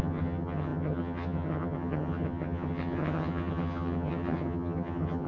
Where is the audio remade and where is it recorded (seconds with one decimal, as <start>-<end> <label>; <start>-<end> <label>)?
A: 0.0-5.3 remade

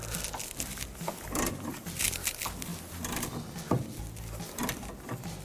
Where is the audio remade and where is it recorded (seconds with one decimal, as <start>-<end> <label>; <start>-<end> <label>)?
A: 0.0-5.4 recorded

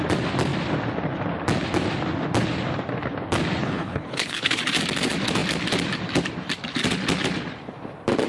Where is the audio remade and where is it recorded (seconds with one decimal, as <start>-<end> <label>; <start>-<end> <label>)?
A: 0.0-3.6 recorded; 3.6-4.6 remade; 4.6-8.3 recorded